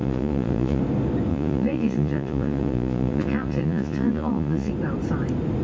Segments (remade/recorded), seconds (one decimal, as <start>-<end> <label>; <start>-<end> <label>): 0.0-0.8 remade; 0.8-1.3 recorded; 1.3-4.7 remade; 4.7-5.6 recorded